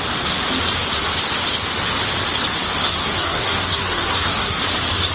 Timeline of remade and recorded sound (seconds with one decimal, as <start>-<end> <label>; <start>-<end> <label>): 0.0-2.8 recorded; 2.8-4.6 remade; 4.6-5.1 recorded